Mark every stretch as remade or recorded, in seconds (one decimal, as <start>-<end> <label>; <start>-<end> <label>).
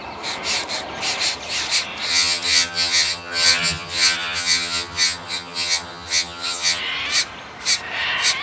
0.0-2.1 recorded; 2.1-6.8 remade; 6.8-8.4 recorded